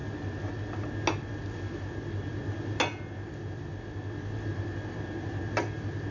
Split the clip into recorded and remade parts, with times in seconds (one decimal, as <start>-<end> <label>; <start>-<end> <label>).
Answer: 0.0-6.1 recorded